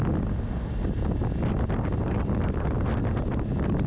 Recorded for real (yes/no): yes